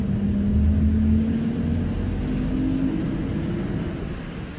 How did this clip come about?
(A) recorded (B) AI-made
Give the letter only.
A